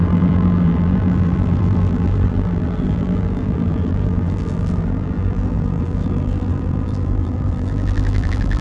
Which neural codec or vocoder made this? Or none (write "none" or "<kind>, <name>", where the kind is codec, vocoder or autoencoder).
vocoder, BigVGAN v2